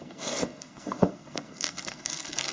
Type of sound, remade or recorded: remade